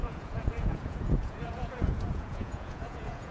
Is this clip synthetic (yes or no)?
yes